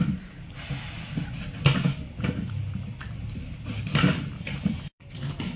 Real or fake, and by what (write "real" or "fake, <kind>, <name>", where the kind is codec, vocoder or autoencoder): fake, vocoder, BigVGAN v2